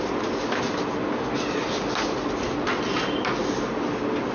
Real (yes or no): yes